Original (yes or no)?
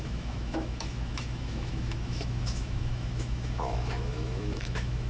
no